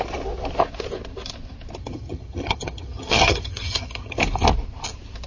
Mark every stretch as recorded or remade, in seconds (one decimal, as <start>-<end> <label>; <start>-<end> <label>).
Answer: 0.0-1.8 recorded; 1.8-4.2 remade; 4.2-5.3 recorded